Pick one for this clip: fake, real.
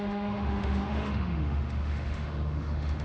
fake